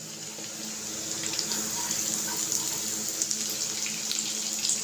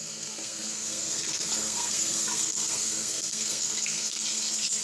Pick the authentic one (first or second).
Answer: first